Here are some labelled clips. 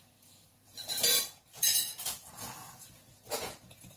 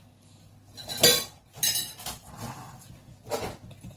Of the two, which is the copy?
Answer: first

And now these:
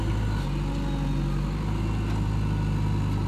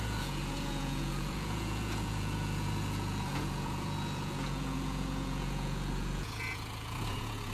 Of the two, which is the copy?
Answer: second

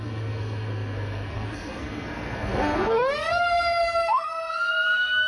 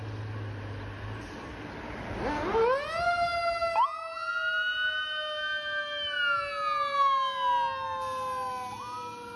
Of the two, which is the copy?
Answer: first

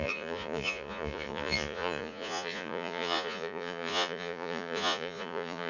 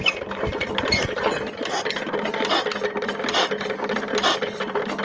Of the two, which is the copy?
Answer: first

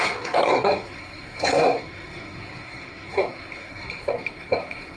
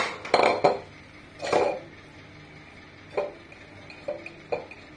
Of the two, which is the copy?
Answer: first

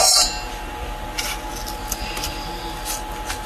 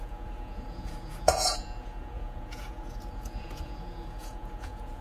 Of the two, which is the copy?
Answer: second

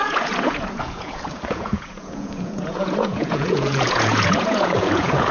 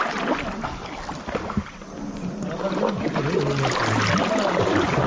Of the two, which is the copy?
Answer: first